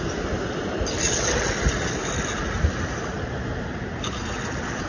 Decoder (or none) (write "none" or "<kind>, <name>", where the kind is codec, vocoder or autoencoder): none